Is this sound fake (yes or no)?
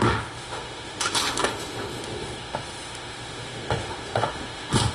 yes